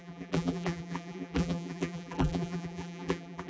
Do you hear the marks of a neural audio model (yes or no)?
yes